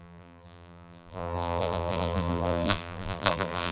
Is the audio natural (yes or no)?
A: no